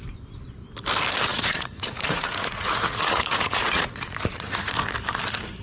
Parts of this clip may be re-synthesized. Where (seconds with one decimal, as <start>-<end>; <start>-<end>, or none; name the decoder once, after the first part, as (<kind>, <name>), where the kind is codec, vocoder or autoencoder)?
1.3-4.7 (vocoder, Vocos)